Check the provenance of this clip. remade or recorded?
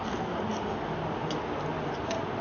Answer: recorded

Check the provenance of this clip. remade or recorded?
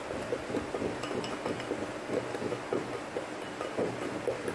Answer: recorded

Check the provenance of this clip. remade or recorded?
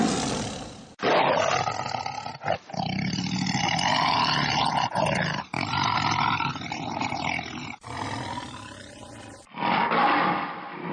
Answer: recorded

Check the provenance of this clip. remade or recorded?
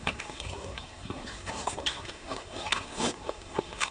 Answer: remade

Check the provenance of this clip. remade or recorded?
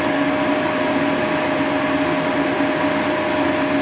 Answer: recorded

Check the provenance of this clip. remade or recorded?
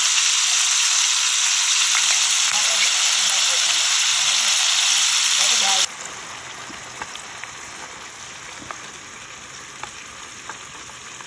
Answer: recorded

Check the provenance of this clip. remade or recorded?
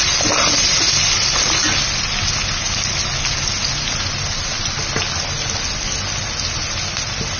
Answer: recorded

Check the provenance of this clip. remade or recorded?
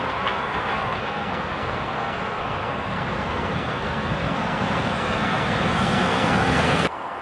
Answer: remade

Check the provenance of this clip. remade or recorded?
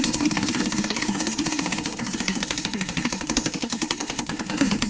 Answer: remade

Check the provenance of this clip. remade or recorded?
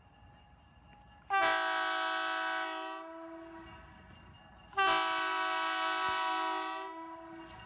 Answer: recorded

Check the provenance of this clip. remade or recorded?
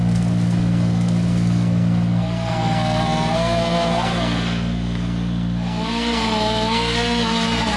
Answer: remade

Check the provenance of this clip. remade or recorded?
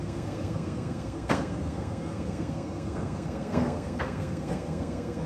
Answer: remade